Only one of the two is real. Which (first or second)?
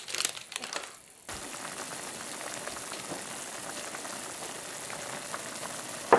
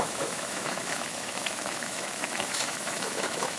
first